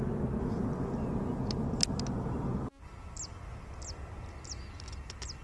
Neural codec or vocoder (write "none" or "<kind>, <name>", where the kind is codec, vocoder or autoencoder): none